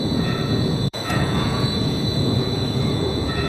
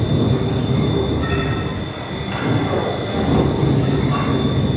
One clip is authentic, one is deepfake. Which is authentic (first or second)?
second